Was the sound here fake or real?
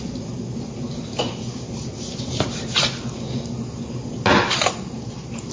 real